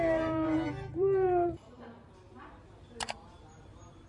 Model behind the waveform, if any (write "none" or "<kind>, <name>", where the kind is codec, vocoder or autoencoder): vocoder, BigVGAN v2